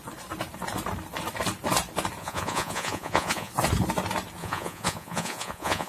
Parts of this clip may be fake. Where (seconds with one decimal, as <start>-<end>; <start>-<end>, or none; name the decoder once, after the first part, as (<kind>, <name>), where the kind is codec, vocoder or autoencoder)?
2.2-3.5 (vocoder, Vocos); 4.4-5.9